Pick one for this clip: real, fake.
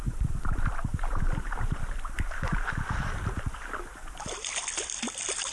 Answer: real